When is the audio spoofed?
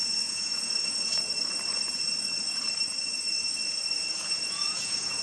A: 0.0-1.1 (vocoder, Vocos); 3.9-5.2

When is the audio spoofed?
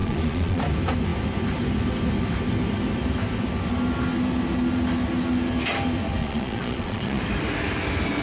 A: 0.0-0.6 (vocoder, Vocos); 6.2-7.2